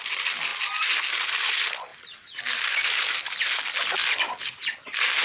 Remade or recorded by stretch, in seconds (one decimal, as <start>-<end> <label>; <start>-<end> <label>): 0.0-5.2 recorded